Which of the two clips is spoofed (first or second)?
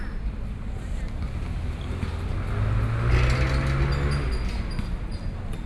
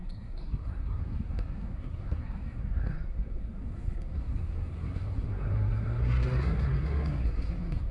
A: second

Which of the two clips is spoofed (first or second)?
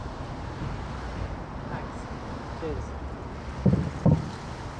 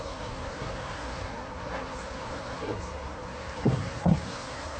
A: second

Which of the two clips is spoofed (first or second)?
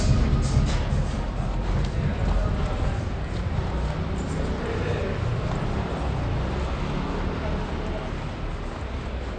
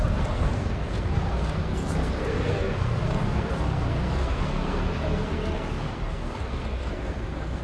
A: second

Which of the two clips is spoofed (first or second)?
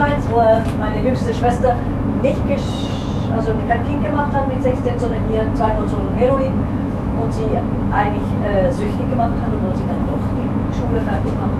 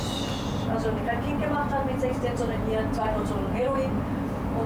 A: first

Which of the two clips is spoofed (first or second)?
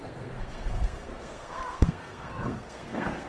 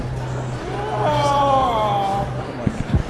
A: first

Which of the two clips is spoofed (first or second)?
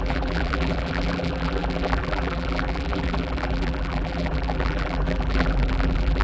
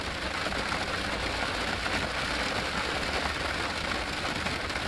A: first